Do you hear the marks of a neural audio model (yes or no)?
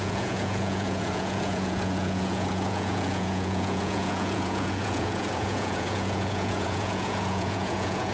yes